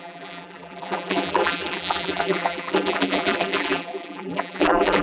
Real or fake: fake